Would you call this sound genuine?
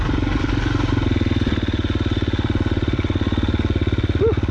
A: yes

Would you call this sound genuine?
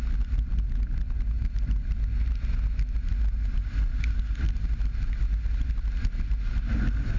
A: yes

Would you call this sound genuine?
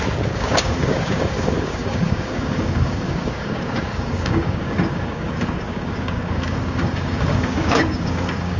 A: no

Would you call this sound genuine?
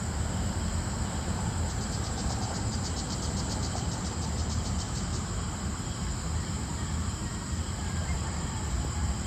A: no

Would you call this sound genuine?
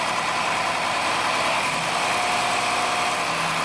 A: yes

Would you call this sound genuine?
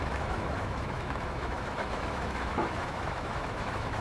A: no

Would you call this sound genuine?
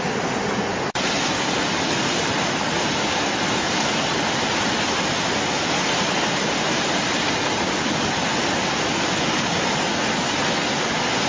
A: yes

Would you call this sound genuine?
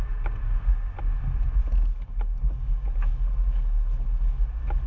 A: yes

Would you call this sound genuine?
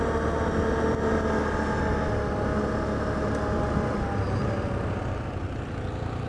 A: yes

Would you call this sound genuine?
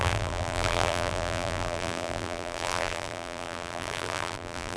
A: no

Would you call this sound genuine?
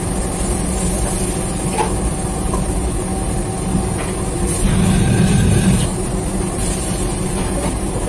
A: yes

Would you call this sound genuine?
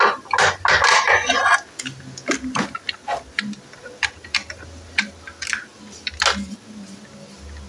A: yes